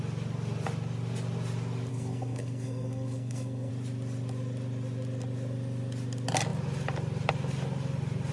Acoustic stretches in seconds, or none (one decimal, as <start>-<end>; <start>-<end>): 0.0-1.9; 3.7-8.3